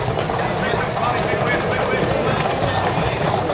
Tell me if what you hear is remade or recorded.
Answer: recorded